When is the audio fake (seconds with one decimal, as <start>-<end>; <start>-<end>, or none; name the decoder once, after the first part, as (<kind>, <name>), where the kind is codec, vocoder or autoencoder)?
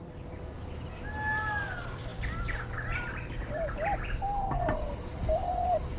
none